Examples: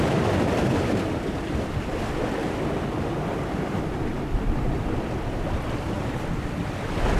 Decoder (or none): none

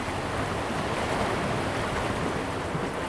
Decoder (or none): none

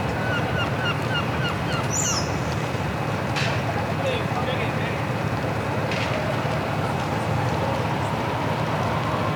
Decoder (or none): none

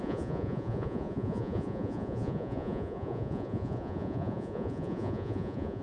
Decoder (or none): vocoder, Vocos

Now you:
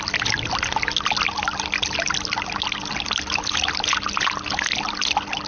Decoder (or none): none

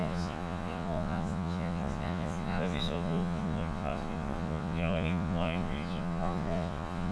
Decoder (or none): vocoder, Vocos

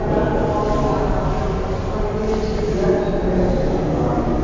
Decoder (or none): none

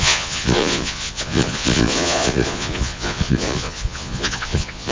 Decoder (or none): vocoder, Vocos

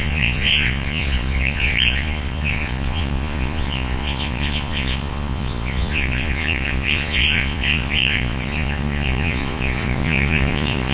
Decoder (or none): vocoder, Vocos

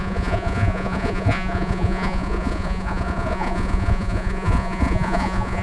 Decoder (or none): vocoder, Vocos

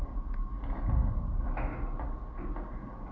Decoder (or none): none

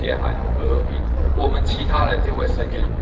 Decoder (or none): vocoder, Vocos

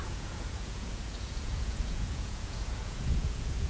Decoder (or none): vocoder, Vocos